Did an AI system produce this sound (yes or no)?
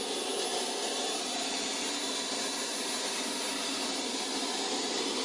no